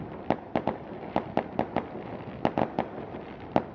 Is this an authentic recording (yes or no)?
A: yes